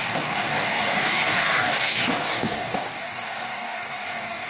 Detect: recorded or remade remade